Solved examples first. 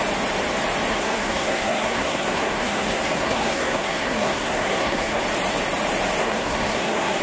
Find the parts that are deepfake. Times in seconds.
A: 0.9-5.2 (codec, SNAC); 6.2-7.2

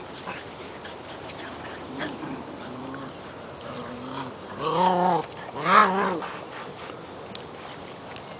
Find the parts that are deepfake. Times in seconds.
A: none

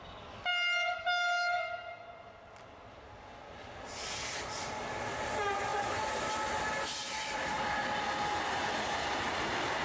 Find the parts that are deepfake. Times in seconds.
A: none

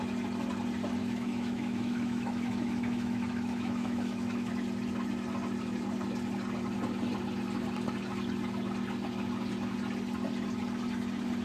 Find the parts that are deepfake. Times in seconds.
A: 1.0-4.5 (autoencoder, DAC-VAE)

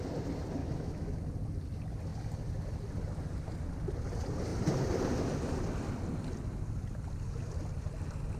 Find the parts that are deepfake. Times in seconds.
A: 0.6-1.2 (autoencoder, DAC-VAE)